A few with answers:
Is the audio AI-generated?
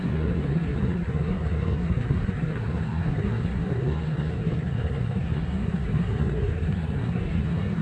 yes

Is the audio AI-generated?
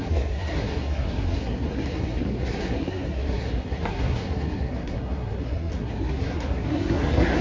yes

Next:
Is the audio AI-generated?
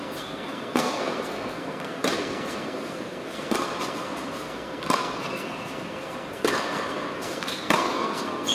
yes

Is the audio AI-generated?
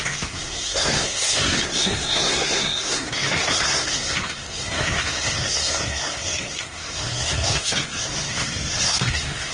yes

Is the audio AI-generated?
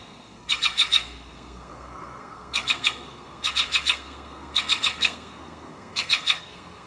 yes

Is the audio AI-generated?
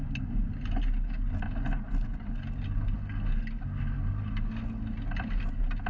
no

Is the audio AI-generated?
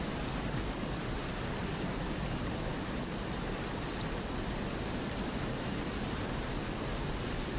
no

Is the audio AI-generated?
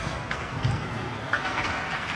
yes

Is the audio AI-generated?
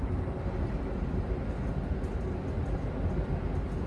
no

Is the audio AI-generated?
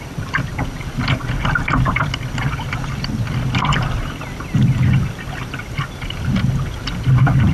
no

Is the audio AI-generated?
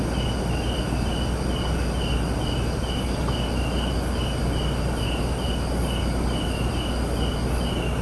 no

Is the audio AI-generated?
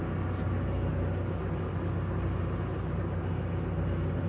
no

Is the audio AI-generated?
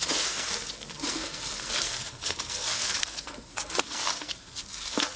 yes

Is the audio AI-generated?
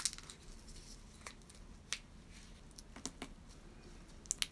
no